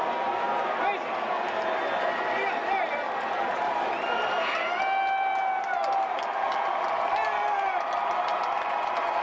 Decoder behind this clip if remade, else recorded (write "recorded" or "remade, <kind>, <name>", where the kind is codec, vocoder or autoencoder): recorded